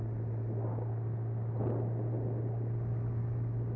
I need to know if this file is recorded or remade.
recorded